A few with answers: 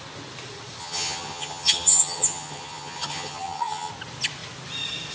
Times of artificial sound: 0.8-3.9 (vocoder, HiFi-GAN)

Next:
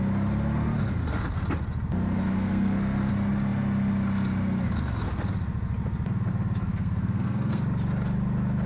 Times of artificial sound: 2.2-3.1 (codec, SNAC); 6.7-7.6

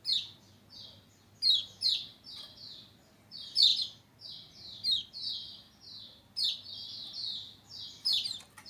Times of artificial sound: none